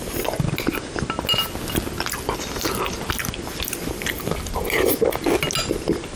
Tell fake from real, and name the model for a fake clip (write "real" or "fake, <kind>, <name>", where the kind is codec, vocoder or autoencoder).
real